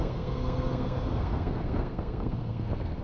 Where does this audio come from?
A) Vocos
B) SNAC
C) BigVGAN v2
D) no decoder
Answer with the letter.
B